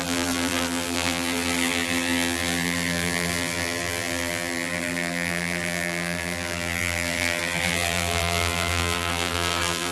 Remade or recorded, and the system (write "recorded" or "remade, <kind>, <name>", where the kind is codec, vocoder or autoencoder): remade, vocoder, BigVGAN v2